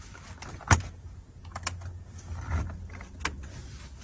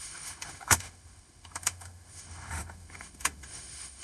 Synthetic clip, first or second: second